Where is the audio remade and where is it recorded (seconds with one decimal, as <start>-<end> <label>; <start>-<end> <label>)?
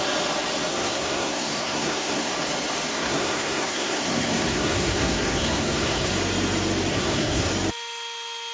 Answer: 0.0-0.7 recorded; 0.7-2.3 remade; 2.3-2.9 recorded; 2.9-6.1 remade; 6.1-6.9 recorded; 6.9-7.5 remade; 7.5-8.5 recorded